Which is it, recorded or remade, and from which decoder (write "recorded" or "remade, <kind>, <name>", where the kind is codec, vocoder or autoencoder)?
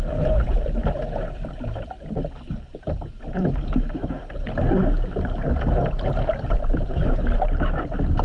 recorded